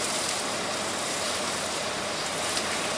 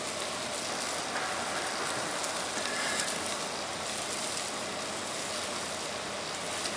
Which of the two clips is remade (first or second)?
first